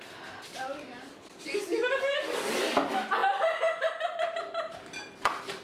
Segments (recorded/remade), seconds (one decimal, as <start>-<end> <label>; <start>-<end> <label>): 0.0-0.7 recorded; 0.7-2.6 remade; 2.6-5.6 recorded